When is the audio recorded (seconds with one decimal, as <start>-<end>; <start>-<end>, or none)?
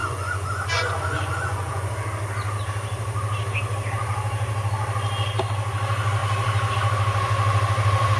1.9-8.2